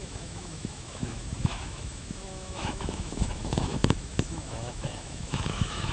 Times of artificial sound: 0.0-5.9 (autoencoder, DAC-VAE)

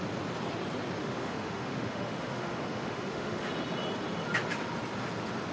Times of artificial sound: 1.0-3.5 (autoencoder, DAC-VAE)

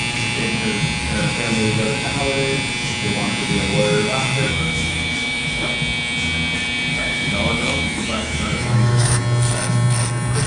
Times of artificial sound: 1.0-2.2 (autoencoder, DAC-VAE); 3.4-5.7; 6.9-9.2

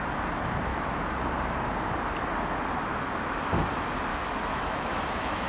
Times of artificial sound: 0.7-1.2 (autoencoder, DAC-VAE); 4.1-5.5

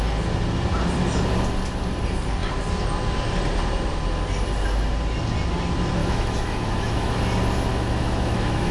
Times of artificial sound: 6.0-7.2 (autoencoder, DAC-VAE); 7.7-8.7